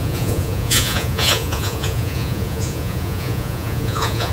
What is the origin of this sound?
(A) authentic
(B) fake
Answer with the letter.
B